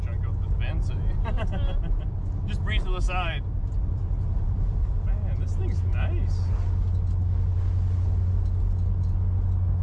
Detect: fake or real real